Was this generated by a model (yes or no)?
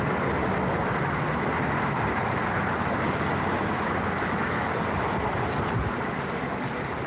no